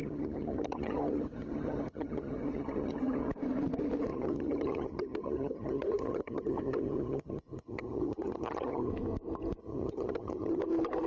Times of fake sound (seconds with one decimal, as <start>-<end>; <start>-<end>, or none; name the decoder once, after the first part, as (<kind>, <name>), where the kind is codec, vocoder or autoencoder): 0.0-3.3 (vocoder, HiFi-GAN); 4.1-8.9; 9.6-10.6